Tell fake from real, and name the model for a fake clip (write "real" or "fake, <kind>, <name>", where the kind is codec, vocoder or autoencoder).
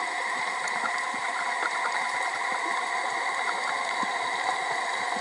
real